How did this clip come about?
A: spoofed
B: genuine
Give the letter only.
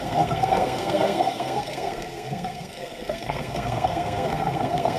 A